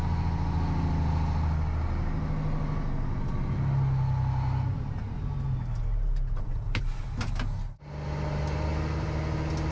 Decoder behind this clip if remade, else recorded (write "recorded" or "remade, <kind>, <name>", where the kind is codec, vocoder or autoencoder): recorded